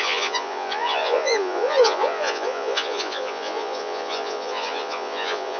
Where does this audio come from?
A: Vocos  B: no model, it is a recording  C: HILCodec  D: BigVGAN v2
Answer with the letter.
A